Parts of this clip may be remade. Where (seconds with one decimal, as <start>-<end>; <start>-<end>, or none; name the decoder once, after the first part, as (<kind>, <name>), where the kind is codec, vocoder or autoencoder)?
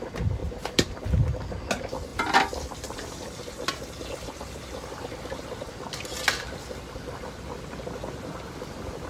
0.4-1.0 (vocoder, BigVGAN v2)